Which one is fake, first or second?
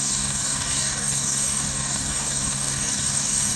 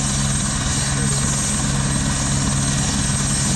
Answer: first